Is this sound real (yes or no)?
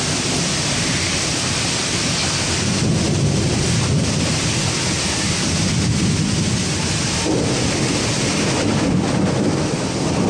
yes